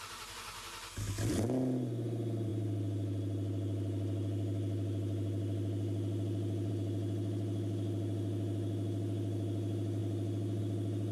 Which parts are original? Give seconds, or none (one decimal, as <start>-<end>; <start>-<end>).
0.0-11.1